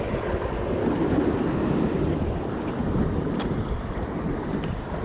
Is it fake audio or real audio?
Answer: fake